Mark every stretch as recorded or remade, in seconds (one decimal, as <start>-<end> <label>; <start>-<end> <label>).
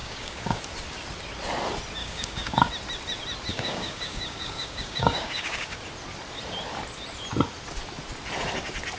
0.0-0.6 remade; 0.6-2.0 recorded; 2.0-2.7 remade; 2.7-3.5 recorded; 3.5-5.8 remade; 5.8-9.0 recorded